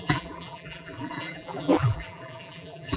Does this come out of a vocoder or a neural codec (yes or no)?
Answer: yes